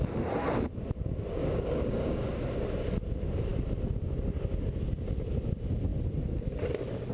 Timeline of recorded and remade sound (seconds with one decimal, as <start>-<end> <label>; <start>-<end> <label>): 0.0-1.3 recorded; 1.3-2.3 remade; 2.3-7.1 recorded